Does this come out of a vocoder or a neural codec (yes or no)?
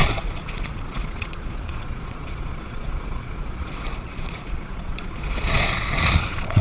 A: yes